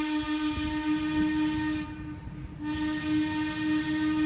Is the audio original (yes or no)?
yes